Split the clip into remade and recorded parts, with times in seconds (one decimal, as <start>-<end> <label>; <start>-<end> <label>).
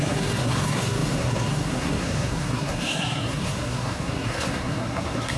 0.0-5.4 remade